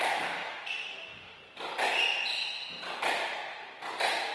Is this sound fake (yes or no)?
yes